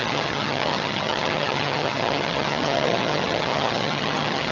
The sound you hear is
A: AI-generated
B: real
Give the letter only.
A